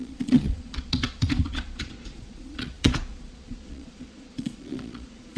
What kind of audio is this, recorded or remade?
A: remade